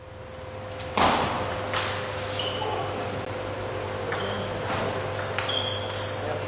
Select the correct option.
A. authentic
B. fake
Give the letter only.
A